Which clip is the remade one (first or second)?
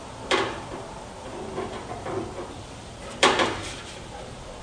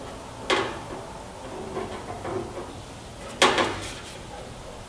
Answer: first